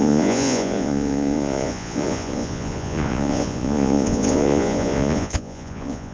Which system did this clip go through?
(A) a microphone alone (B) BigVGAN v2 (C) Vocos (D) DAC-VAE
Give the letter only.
C